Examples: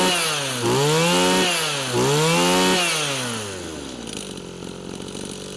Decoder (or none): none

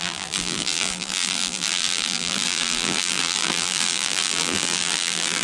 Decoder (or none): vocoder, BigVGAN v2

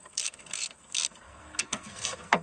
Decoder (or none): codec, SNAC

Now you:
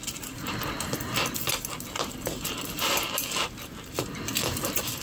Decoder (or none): none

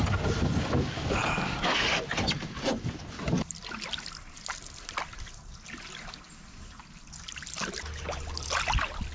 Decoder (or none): none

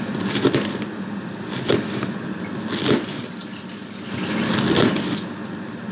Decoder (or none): none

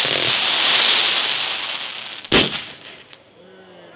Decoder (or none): none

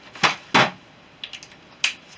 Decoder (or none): none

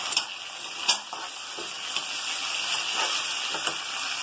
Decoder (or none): none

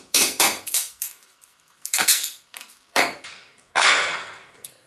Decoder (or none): codec, SNAC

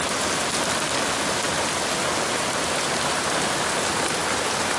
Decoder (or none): none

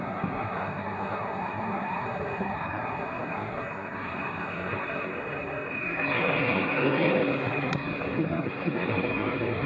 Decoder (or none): codec, SNAC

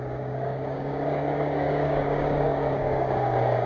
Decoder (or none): codec, DAC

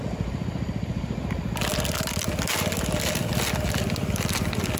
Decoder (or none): none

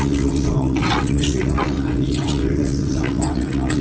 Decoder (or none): vocoder, WaveNeXt